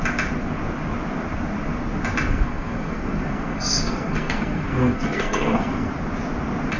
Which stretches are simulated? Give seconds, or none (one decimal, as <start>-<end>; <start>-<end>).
2.3-5.9